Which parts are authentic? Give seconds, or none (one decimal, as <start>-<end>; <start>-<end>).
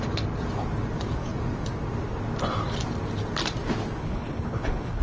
0.0-4.0